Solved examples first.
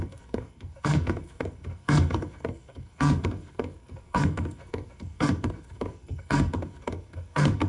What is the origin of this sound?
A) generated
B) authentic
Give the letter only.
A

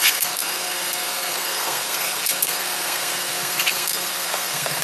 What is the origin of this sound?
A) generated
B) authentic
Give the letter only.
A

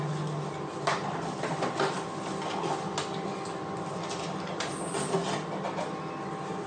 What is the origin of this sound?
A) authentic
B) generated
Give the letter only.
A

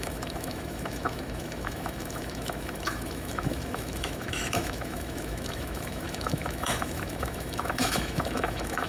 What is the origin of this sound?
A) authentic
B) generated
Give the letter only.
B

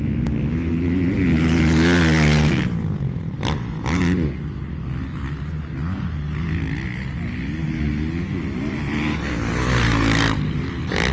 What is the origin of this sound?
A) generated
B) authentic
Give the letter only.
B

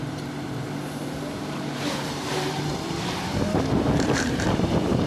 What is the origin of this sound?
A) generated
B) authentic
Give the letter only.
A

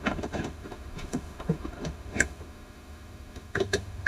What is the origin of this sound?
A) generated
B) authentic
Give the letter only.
A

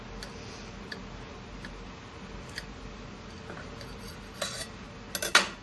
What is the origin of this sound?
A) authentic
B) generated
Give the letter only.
A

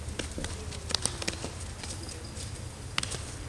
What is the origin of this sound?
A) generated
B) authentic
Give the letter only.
B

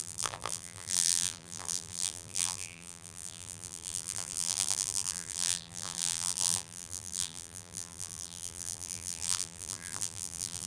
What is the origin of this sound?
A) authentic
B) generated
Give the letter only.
B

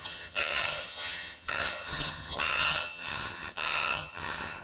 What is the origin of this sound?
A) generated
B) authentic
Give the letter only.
A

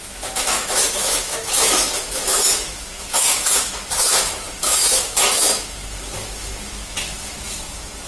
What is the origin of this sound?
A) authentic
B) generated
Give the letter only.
B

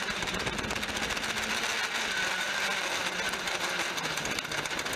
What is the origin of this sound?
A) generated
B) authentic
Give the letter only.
B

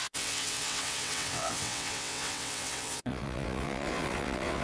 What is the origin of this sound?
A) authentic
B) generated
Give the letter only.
B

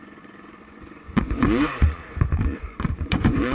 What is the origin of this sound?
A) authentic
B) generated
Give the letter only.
B